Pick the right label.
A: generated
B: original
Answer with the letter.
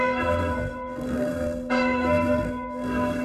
A